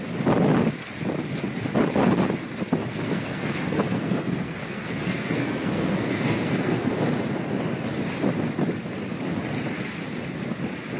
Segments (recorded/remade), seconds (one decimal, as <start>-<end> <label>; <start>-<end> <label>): 0.0-2.9 recorded; 2.9-6.9 remade; 6.9-11.0 recorded